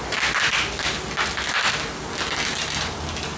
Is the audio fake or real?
real